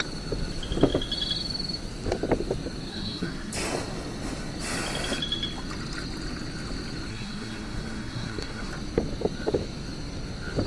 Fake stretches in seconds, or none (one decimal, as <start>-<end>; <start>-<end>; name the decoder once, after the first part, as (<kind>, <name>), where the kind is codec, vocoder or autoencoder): 2.9-3.5 (codec, SNAC); 7.1-8.7